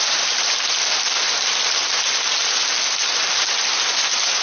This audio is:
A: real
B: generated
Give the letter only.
A